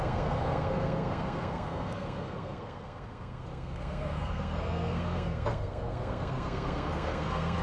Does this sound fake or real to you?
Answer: fake